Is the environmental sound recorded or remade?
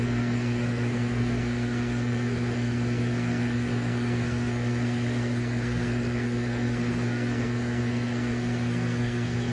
remade